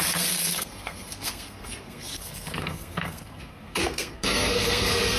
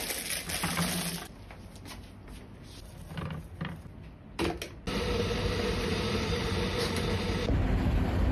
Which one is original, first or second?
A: second